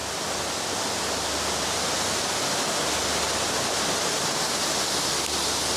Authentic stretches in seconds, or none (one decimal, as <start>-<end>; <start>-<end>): 0.0-5.8